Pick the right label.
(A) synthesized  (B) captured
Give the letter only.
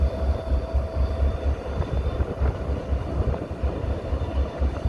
B